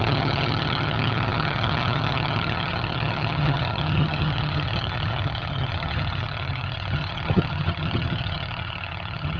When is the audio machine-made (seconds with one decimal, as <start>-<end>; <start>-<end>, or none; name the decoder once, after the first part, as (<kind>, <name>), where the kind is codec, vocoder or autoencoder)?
0.0-9.4 (vocoder, HiFi-GAN)